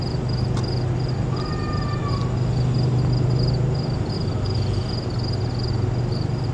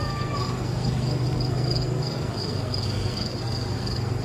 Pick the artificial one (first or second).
second